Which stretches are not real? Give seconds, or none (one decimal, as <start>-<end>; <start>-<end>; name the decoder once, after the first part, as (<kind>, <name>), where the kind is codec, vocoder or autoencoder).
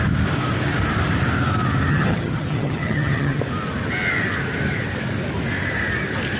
1.9-3.4 (vocoder, HiFi-GAN)